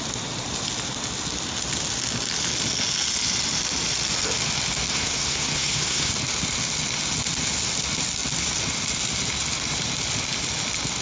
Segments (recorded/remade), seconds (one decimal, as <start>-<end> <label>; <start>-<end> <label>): 0.0-4.9 recorded; 4.9-6.1 remade; 6.1-11.0 recorded